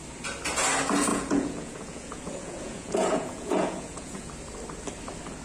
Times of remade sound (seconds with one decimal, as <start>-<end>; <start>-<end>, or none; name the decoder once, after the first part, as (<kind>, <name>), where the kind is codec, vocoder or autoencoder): 1.1-4.3 (vocoder, Vocos)